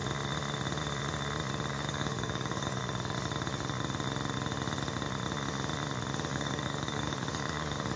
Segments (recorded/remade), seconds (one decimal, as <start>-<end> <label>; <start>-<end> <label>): 0.0-1.7 recorded; 1.7-2.8 remade; 2.8-6.3 recorded; 6.3-8.0 remade